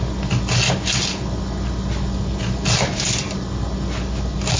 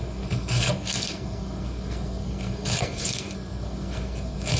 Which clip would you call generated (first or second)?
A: second